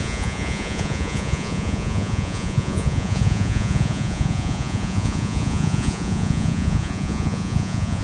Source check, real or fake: fake